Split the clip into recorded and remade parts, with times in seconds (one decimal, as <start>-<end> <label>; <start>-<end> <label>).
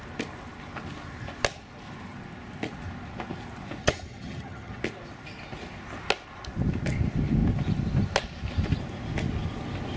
0.0-3.8 recorded; 3.8-4.8 remade; 4.8-10.0 recorded